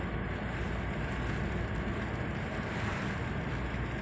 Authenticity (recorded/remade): recorded